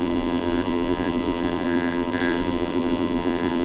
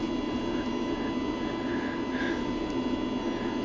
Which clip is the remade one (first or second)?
first